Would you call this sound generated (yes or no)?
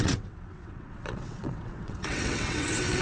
yes